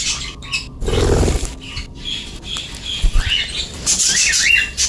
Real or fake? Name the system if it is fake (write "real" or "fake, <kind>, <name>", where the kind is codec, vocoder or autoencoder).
real